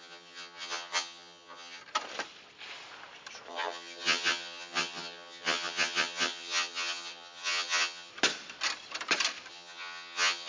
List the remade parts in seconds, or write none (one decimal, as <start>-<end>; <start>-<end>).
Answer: 0.0-1.8; 3.5-8.1; 9.5-10.5